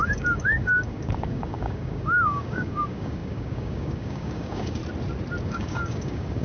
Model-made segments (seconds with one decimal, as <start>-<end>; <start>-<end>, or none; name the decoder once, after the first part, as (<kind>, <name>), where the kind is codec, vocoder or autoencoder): 0.0-4.8 (codec, DAC); 5.4-6.4